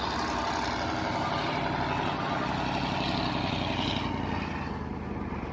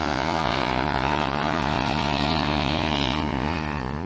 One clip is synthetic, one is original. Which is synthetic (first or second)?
second